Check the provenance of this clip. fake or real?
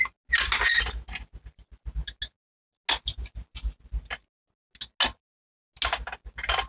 real